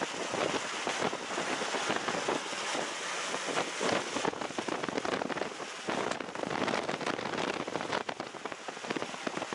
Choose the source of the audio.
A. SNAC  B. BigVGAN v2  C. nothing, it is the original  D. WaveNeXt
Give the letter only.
C